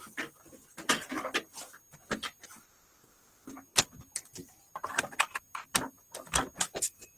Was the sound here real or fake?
real